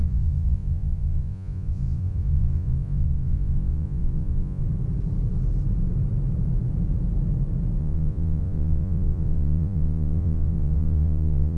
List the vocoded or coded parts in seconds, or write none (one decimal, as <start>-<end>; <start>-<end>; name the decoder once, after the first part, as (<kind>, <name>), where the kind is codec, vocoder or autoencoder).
0.0-4.6 (vocoder, Vocos); 7.8-11.6